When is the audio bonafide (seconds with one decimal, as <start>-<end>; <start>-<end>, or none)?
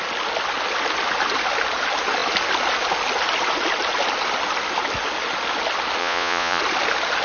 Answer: 0.0-6.0; 6.6-7.2